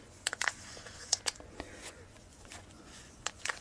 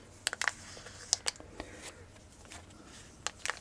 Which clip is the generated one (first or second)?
first